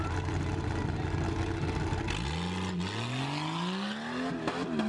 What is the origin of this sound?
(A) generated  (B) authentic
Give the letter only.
B